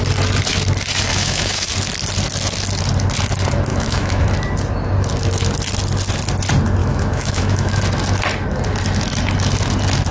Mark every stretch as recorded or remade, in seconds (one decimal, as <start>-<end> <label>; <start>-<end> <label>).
0.0-1.1 recorded; 1.1-1.7 remade; 1.7-3.7 recorded; 3.7-4.2 remade; 4.2-6.8 recorded; 6.8-7.8 remade; 7.8-10.1 recorded